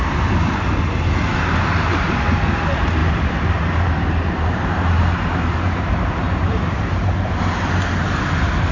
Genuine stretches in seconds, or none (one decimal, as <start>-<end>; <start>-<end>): 0.0-1.3; 2.2-3.0; 7.4-8.7